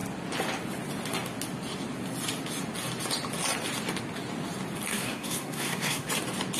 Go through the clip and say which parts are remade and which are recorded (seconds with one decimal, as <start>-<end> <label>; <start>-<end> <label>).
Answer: 0.0-4.9 recorded; 4.9-6.1 remade; 6.1-6.6 recorded